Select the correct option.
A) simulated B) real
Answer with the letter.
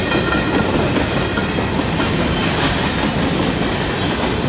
B